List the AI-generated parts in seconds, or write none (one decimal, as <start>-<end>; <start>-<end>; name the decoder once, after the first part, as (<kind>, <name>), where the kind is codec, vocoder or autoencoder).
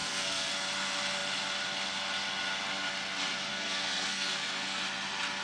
0.0-0.5 (codec, SNAC); 3.5-4.8